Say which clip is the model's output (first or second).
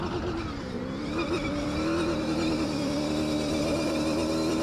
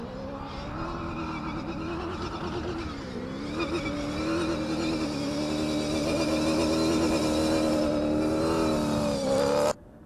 first